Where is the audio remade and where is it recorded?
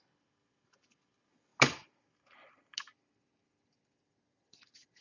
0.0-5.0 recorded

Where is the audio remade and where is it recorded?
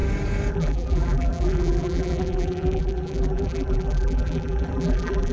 0.0-0.5 recorded; 0.5-5.3 remade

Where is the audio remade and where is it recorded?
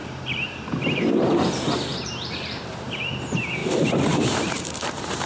0.0-1.4 remade; 1.4-1.9 recorded; 1.9-2.9 remade; 2.9-3.6 recorded; 3.6-5.3 remade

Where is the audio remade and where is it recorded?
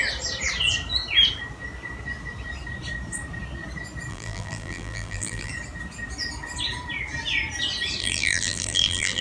0.0-4.1 recorded; 4.1-5.5 remade; 5.5-8.0 recorded; 8.0-9.2 remade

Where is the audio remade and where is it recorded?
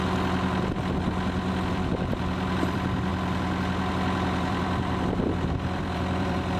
0.0-1.5 recorded; 1.5-3.1 remade; 3.1-3.9 recorded; 3.9-6.6 remade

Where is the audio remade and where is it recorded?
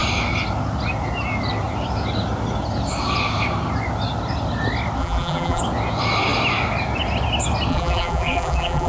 0.0-5.0 recorded; 5.0-5.6 remade; 5.6-7.7 recorded; 7.7-8.9 remade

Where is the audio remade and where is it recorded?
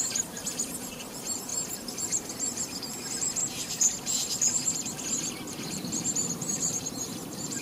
0.0-1.5 remade; 1.5-2.8 recorded; 2.8-3.4 remade; 3.4-5.6 recorded; 5.6-7.6 remade